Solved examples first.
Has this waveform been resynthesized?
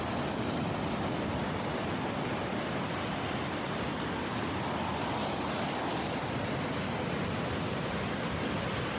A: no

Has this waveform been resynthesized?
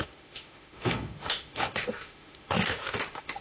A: yes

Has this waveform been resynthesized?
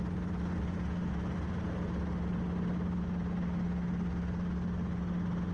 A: no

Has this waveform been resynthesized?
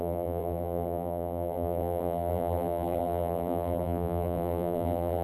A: yes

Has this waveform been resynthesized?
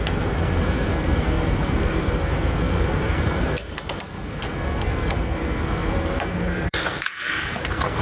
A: yes